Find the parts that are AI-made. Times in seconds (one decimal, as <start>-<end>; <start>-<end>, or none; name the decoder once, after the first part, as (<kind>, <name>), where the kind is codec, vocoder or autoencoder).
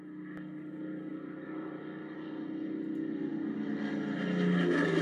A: 1.1-1.8 (vocoder, BigVGAN v2)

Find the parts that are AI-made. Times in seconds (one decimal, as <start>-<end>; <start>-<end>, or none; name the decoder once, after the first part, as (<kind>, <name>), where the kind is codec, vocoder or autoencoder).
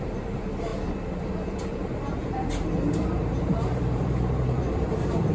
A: 0.0-0.7 (vocoder, BigVGAN v2); 1.6-5.3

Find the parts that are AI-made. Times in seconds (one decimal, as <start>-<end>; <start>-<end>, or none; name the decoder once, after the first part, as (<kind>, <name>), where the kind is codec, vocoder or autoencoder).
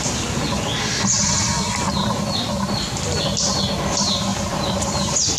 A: 4.3-4.8 (vocoder, BigVGAN v2)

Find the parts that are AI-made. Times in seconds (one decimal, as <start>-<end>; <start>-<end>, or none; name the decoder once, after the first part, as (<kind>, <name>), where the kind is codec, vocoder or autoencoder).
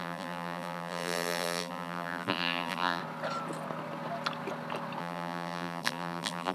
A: 0.0-3.0 (vocoder, BigVGAN v2); 5.0-6.5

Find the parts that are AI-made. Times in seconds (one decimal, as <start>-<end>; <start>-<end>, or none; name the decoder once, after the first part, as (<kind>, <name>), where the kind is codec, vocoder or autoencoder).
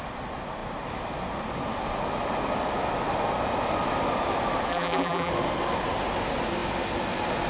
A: 4.7-5.3 (vocoder, BigVGAN v2)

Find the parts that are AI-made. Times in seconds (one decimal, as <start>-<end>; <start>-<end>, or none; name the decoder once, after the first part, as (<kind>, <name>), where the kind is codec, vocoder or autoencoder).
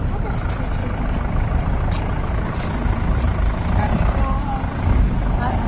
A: 0.8-4.2 (vocoder, BigVGAN v2)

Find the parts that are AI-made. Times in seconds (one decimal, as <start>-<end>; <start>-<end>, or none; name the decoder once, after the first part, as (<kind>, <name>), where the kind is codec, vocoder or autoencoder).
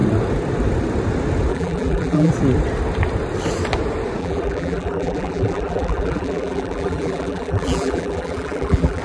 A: 1.5-2.3 (vocoder, BigVGAN v2); 4.2-9.0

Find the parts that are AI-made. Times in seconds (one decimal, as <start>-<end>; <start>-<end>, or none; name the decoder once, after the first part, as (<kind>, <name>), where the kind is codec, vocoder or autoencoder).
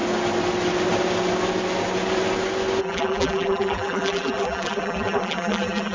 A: 2.8-5.9 (vocoder, BigVGAN v2)